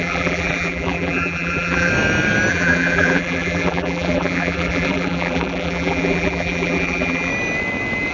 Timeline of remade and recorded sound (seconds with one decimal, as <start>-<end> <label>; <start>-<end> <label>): 0.0-1.9 remade; 1.9-2.5 recorded; 2.5-7.3 remade; 7.3-8.1 recorded